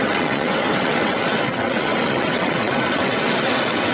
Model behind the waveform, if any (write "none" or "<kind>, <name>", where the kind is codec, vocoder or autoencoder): vocoder, WaveNeXt